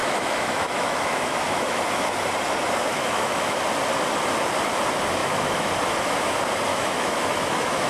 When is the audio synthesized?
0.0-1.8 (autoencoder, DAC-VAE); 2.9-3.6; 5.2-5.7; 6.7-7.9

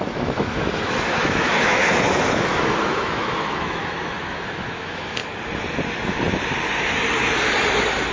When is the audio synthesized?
0.0-5.2 (autoencoder, DAC-VAE)

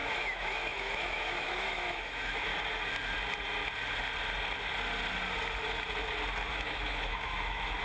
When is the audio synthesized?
0.0-2.5 (autoencoder, DAC-VAE); 6.5-7.8

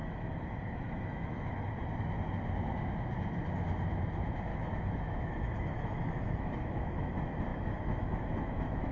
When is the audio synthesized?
0.0-1.7 (autoencoder, DAC-VAE); 4.5-7.1; 7.5-8.9